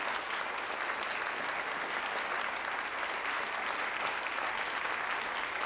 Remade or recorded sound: recorded